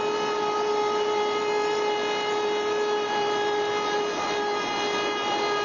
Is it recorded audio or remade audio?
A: remade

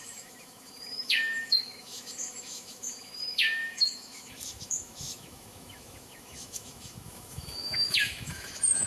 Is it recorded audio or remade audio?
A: remade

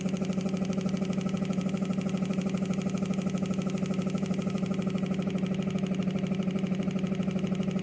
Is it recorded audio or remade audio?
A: recorded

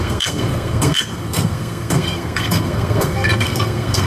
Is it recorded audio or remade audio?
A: remade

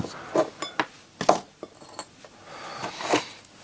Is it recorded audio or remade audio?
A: recorded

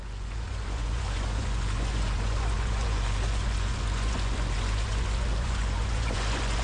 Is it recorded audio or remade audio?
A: remade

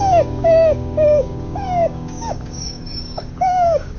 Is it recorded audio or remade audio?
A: remade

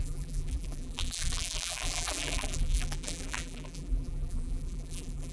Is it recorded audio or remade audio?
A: remade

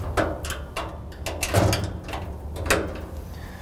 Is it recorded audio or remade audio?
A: recorded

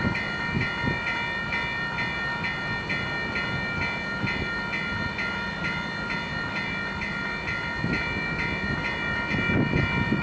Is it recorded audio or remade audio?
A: recorded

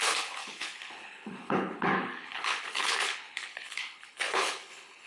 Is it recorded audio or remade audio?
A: remade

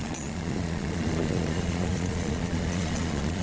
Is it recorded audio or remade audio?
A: remade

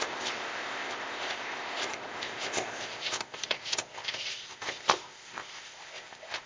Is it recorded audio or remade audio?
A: remade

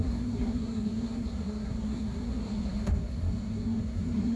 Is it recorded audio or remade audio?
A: remade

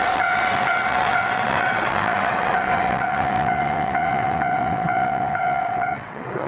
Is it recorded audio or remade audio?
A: remade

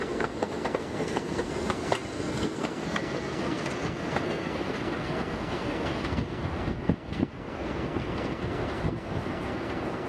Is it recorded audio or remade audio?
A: remade